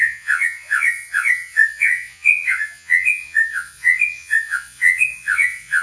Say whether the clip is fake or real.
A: fake